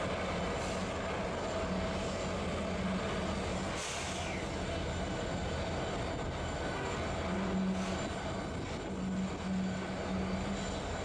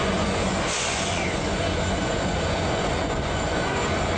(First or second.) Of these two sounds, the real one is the first